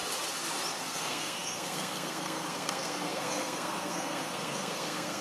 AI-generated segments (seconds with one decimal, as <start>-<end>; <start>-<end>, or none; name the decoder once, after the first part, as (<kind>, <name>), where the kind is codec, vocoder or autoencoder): 0.8-5.2 (codec, SNAC)